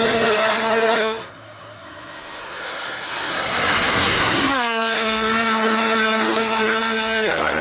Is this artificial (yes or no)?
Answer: yes